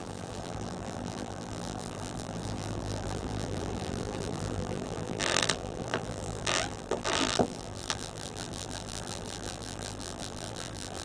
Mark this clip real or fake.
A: fake